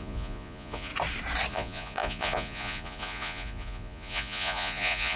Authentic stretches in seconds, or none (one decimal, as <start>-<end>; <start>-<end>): 0.9-1.5

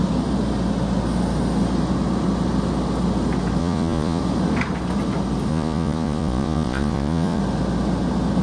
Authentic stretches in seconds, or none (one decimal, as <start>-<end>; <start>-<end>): 0.0-3.6; 4.2-5.5; 7.4-8.4

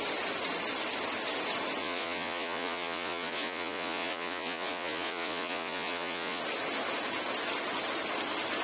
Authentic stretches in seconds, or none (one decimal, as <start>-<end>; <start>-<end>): 0.0-1.8; 6.4-8.6

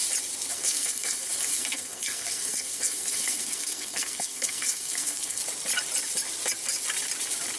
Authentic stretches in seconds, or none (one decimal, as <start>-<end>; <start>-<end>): 0.0-0.5; 5.4-7.6

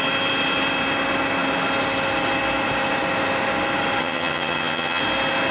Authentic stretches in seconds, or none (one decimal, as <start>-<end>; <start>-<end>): 0.0-4.0; 5.0-5.5